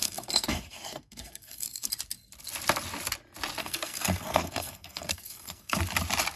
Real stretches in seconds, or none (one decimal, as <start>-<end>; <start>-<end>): 1.9-3.6; 5.8-6.4